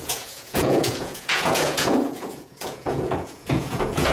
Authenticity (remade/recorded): remade